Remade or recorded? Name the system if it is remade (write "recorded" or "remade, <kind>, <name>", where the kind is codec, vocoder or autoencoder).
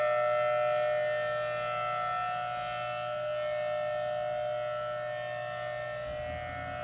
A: recorded